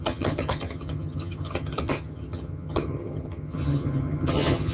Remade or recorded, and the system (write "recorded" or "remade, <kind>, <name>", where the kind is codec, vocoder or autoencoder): remade, vocoder, HiFi-GAN